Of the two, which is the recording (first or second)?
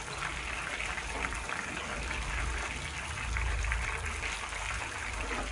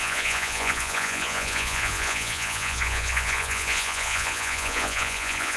first